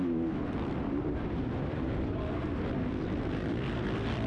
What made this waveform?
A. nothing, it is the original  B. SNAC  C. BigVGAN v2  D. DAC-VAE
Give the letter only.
A